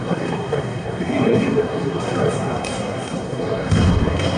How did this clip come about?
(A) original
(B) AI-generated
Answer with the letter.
B